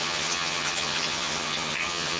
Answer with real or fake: fake